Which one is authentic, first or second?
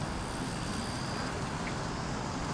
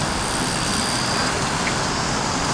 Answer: first